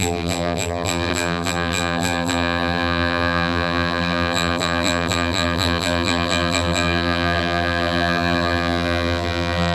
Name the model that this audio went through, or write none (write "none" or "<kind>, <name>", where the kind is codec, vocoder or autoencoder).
vocoder, BigVGAN v2